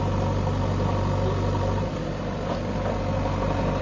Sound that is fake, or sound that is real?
real